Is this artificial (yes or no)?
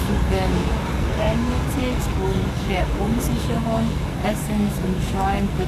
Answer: yes